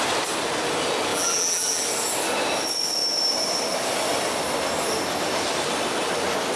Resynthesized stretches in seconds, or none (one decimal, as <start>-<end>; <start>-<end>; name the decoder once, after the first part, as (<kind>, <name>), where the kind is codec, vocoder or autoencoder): 1.1-1.8 (vocoder, BigVGAN v2)